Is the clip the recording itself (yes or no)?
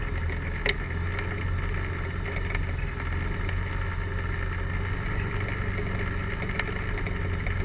yes